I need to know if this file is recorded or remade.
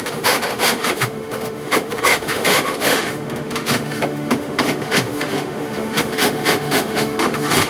remade